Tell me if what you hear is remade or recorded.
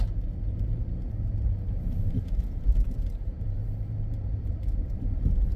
remade